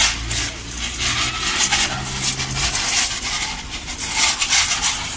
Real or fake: real